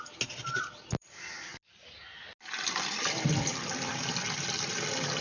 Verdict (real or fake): real